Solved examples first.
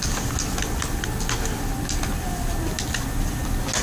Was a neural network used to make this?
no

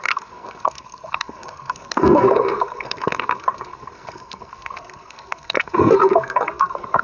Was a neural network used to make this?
yes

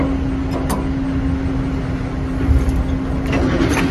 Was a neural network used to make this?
no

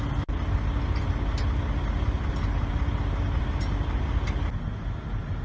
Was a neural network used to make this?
no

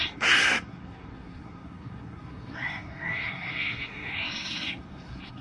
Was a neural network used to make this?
yes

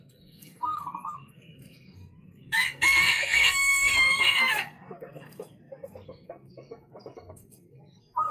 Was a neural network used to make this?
yes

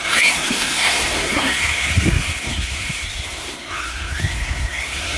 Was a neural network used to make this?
yes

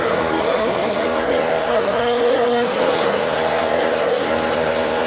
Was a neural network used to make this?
yes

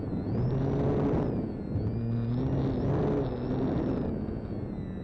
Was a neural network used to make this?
no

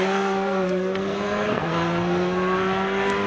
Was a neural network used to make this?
yes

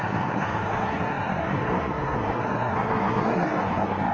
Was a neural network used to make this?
yes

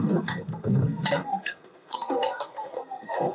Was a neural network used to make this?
yes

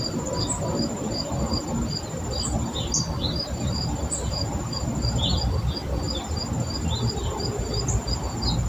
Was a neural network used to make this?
no